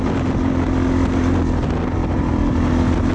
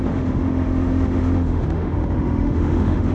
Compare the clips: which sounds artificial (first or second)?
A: second